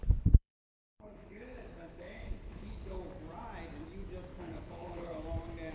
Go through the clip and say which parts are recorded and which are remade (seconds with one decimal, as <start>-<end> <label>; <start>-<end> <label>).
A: 0.0-3.0 remade; 3.0-4.3 recorded; 4.3-5.2 remade; 5.2-5.7 recorded

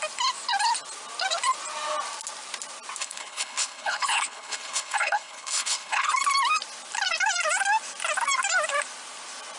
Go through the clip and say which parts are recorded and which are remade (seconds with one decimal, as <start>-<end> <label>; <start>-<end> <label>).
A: 0.0-3.0 recorded; 3.0-6.1 remade; 6.1-9.6 recorded

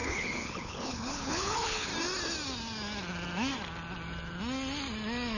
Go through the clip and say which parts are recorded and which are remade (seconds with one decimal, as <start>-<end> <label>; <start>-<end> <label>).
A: 0.0-1.9 remade; 1.9-5.4 recorded

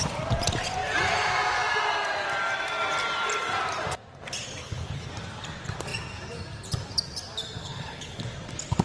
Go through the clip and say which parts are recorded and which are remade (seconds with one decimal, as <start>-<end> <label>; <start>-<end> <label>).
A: 0.0-4.6 recorded; 4.6-5.1 remade; 5.1-7.6 recorded; 7.6-8.2 remade; 8.2-8.8 recorded